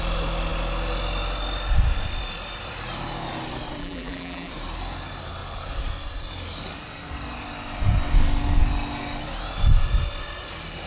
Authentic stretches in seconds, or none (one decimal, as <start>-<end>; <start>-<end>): 0.0-3.8; 4.5-10.9